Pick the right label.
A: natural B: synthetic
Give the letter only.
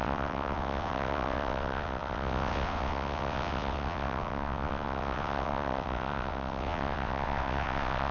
B